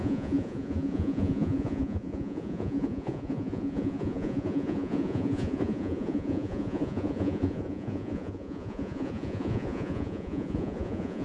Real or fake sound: fake